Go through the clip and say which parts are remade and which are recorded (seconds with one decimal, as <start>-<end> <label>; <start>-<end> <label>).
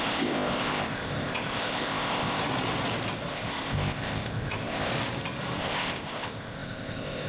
0.0-2.4 remade; 2.4-3.3 recorded; 3.3-4.9 remade; 4.9-5.6 recorded; 5.6-7.3 remade